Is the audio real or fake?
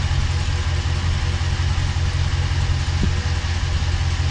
real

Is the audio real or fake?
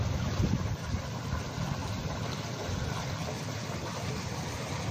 real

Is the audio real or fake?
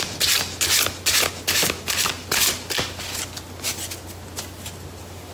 real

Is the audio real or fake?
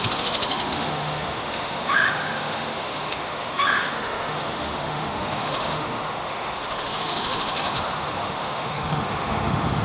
fake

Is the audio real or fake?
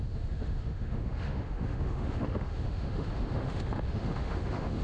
fake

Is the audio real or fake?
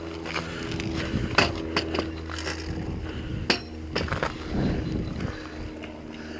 real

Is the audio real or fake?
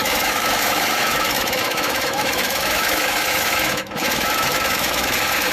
fake